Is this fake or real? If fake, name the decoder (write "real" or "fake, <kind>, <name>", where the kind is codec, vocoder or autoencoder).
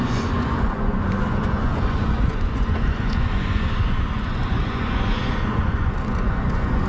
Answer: fake, vocoder, Vocos